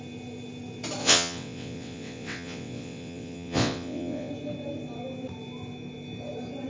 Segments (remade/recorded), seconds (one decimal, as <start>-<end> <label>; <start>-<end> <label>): 0.0-1.0 recorded; 1.0-4.3 remade; 4.3-6.7 recorded